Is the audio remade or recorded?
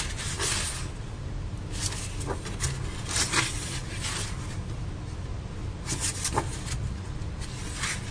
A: recorded